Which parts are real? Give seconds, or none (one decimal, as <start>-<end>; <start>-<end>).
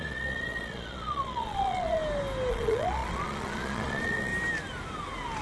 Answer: 2.0-2.5; 4.3-5.4